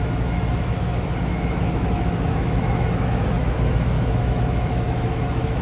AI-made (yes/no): yes